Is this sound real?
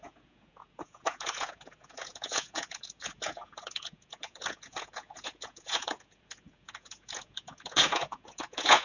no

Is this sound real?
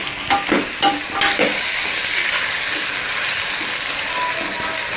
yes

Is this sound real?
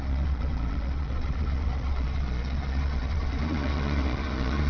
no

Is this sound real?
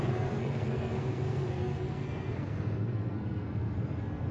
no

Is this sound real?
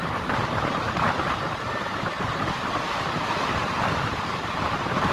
no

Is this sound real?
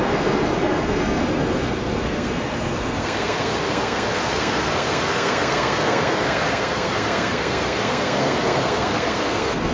no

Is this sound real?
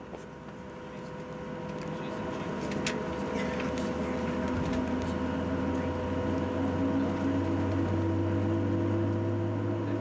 yes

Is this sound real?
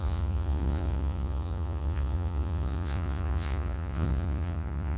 no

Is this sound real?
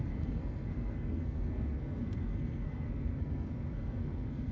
no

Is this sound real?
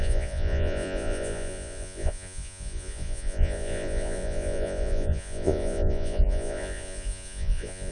no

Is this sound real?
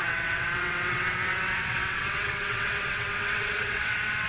no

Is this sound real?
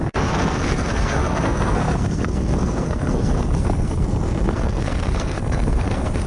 no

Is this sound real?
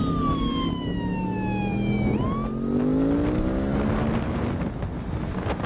yes